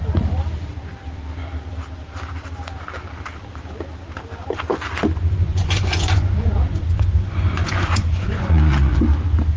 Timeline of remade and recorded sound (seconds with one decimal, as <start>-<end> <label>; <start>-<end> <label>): 0.0-5.4 recorded; 5.4-9.0 remade; 9.0-9.6 recorded